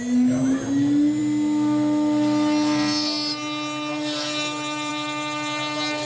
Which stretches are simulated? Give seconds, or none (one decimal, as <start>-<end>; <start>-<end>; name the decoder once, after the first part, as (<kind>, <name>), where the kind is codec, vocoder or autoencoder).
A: none